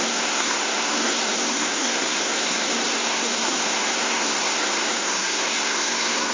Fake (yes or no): yes